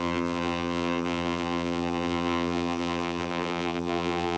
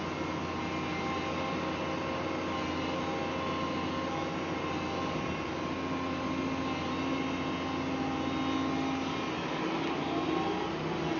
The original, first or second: second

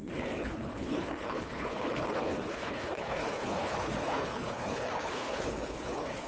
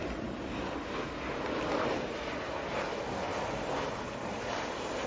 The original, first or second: second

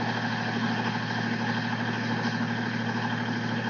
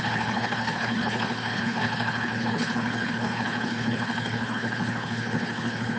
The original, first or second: first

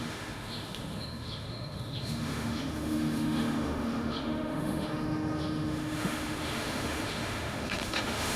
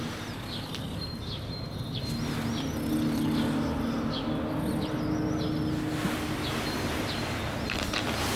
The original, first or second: second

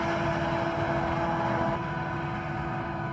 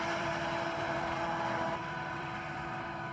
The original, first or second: first